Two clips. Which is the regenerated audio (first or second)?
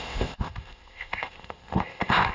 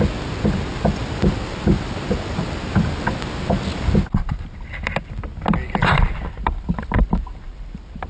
first